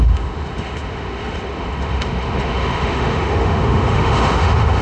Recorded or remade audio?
remade